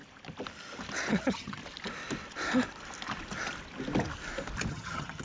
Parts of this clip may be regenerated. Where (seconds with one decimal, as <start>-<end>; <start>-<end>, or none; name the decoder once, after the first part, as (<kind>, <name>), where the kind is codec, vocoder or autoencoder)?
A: 1.2-1.6 (vocoder, HiFi-GAN); 4.7-5.2